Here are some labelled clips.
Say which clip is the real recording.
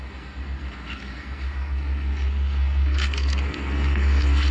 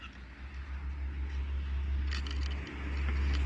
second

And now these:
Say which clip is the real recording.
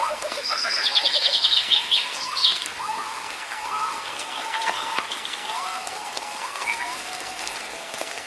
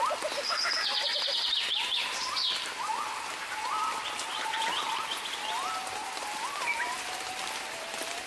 second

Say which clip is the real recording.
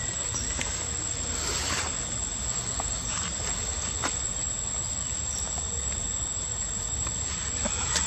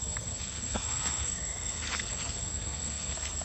first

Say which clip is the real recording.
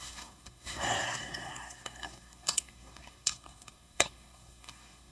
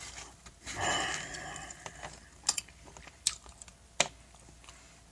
second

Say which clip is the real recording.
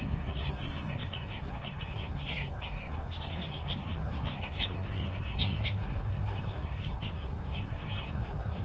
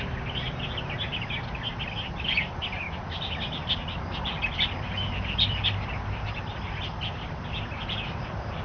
second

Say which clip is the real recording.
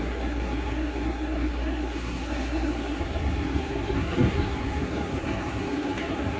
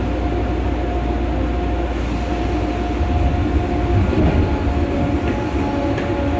second